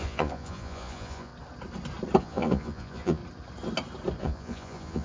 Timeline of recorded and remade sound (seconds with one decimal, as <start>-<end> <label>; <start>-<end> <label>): 0.0-1.3 remade; 1.3-2.2 recorded; 2.2-3.2 remade; 3.2-4.2 recorded; 4.2-5.0 remade